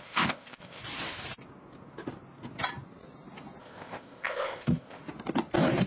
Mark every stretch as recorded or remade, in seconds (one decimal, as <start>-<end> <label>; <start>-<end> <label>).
0.0-0.8 remade; 0.8-3.6 recorded; 3.6-5.0 remade; 5.0-5.9 recorded